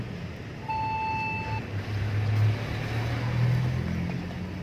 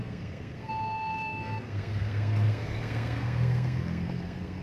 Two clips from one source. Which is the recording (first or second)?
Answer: first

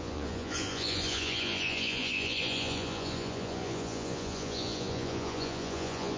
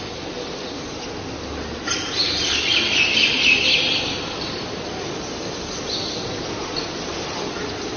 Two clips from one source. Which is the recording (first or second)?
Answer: second